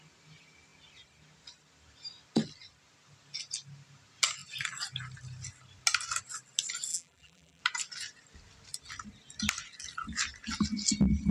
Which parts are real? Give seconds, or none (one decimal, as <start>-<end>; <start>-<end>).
0.0-6.9; 7.6-11.3